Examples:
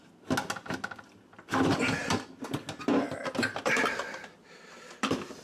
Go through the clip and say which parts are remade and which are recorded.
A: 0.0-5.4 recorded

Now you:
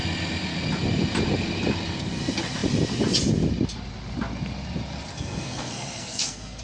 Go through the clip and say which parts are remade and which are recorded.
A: 0.0-5.1 recorded; 5.1-6.6 remade

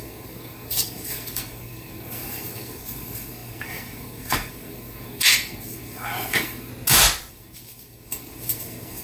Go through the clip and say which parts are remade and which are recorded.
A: 0.0-6.7 remade; 6.7-7.3 recorded; 7.3-9.0 remade